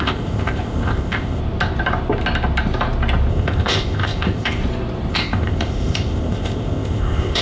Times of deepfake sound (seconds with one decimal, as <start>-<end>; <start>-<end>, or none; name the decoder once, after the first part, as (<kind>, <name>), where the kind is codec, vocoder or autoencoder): 0.0-1.4 (codec, ZipCodec); 3.3-4.6; 5.1-7.4